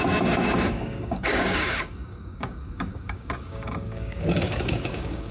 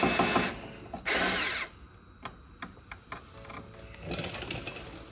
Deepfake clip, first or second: first